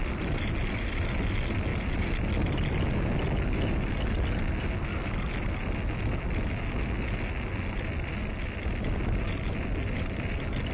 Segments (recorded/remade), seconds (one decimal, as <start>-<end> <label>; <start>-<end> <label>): 0.0-1.7 recorded; 1.7-2.8 remade; 2.8-10.7 recorded